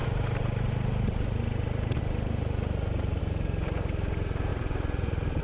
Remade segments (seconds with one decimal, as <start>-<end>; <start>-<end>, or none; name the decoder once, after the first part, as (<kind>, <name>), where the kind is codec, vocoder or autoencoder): 4.5-5.4 (vocoder, BigVGAN v2)